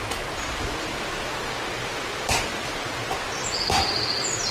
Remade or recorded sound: recorded